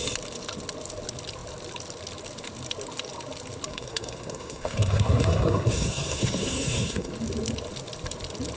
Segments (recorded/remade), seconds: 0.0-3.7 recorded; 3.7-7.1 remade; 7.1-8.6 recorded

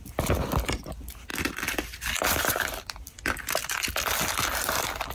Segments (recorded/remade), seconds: 0.0-5.1 recorded

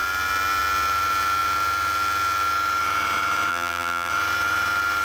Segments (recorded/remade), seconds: 0.0-3.5 recorded; 3.5-4.1 remade; 4.1-5.0 recorded